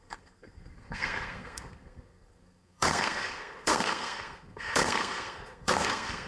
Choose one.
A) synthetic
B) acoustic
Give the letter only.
A